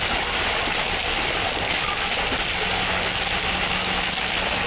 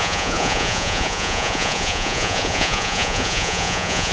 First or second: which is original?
first